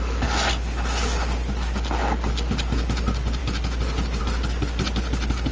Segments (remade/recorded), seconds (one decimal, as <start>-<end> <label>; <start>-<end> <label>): 0.0-5.5 recorded